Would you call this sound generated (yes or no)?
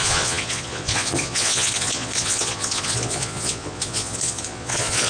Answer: yes